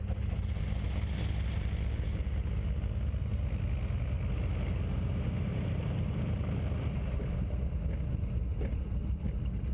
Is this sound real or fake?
real